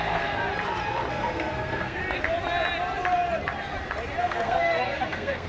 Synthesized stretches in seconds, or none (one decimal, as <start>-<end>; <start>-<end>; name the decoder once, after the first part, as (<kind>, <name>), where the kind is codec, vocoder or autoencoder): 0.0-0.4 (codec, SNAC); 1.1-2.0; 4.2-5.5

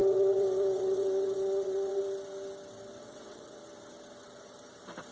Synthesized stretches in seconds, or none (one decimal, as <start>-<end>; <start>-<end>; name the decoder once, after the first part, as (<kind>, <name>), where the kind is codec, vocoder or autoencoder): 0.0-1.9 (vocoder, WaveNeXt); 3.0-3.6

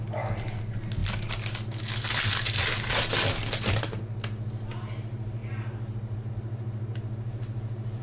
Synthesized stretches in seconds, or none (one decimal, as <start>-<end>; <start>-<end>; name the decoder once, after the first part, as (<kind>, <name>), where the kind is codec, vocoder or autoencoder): none

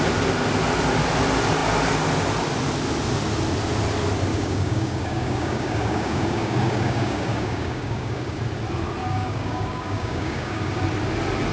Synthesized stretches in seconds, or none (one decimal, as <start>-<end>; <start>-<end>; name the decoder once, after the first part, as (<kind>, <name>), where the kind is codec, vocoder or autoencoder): 4.3-8.4 (codec, DAC); 9.0-10.7

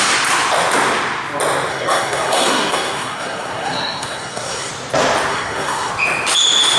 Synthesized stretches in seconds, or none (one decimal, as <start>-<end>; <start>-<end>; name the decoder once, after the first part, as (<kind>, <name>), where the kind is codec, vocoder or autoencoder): 1.7-4.7 (codec, SNAC); 5.3-5.9